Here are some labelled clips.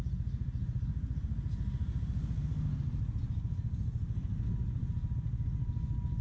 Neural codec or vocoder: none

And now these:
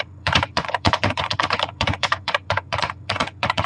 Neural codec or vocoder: vocoder, Vocos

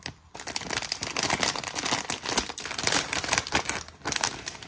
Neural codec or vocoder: none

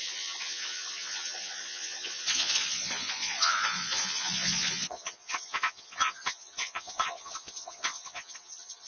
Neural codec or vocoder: vocoder, Vocos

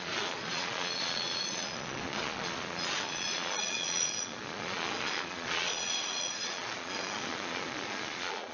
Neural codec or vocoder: vocoder, Vocos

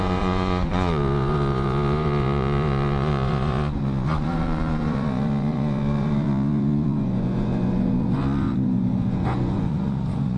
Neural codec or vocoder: vocoder, Vocos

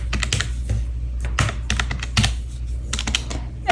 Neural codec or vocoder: none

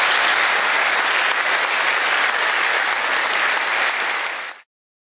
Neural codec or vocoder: none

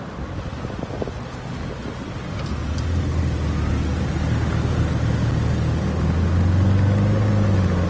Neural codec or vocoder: none